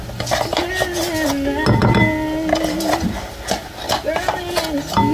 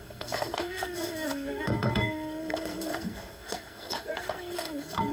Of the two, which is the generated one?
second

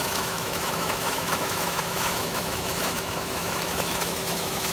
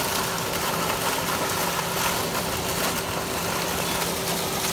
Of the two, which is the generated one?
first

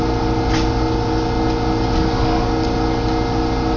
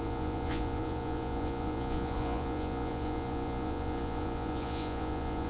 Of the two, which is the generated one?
second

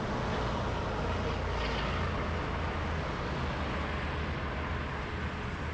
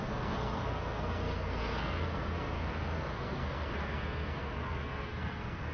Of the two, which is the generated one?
second